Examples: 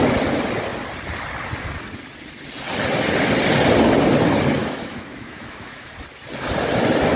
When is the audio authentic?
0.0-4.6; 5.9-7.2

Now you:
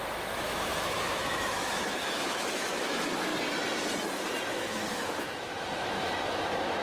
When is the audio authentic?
3.3-4.5

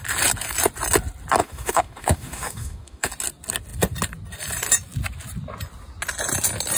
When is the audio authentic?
0.0-1.4; 3.1-6.8

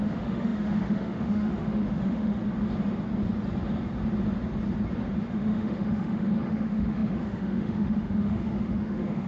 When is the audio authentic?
2.4-5.3

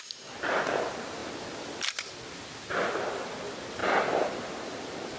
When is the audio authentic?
0.0-5.2

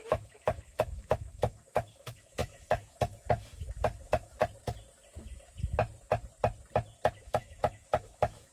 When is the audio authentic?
4.4-7.2

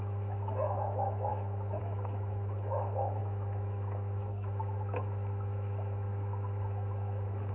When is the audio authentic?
none

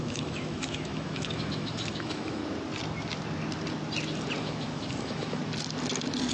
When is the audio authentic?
2.4-4.4; 5.4-6.3